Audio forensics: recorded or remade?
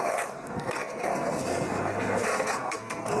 remade